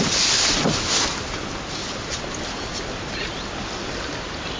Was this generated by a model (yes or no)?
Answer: no